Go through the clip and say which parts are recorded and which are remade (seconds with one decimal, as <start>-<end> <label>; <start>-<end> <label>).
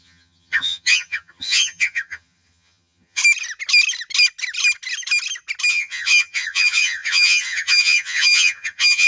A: 0.0-3.2 remade; 3.2-5.7 recorded; 5.7-9.1 remade